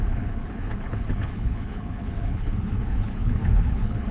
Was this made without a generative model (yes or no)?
no